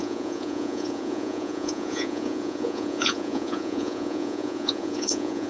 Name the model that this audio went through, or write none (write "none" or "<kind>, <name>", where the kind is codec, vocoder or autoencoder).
vocoder, Vocos